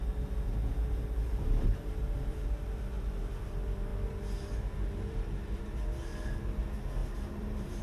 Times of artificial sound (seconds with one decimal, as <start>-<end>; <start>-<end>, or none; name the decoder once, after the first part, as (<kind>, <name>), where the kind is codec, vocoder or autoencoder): 1.7-3.3 (vocoder, BigVGAN v2); 7.0-7.8